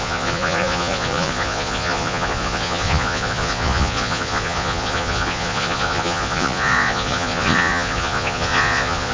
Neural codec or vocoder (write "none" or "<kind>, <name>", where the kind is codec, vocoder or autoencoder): vocoder, Vocos